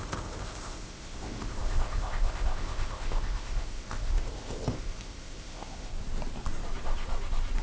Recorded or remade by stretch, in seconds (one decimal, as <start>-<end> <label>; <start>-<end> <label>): 0.0-5.9 remade; 5.9-7.6 recorded

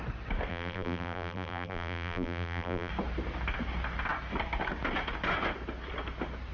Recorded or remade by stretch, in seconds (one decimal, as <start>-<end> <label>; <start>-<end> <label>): 0.0-0.5 recorded; 0.5-2.9 remade; 2.9-6.5 recorded

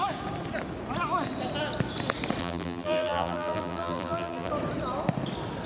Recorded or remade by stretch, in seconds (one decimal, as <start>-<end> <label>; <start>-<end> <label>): 0.0-2.4 recorded; 2.4-4.5 remade; 4.5-5.7 recorded

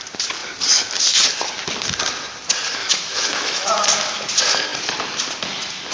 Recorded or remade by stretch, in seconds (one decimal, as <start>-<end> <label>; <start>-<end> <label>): 0.0-2.8 recorded; 2.8-3.7 remade; 3.7-5.9 recorded

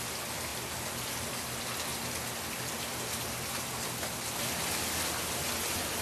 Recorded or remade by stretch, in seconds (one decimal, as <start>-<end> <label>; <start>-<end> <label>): 0.0-6.0 recorded

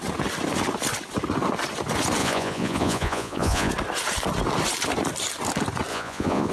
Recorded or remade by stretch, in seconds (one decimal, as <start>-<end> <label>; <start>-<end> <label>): 0.0-2.2 recorded; 2.2-3.7 remade; 3.7-5.9 recorded; 5.9-6.5 remade